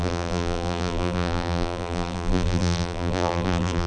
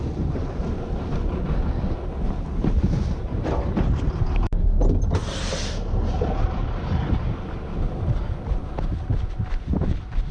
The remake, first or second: first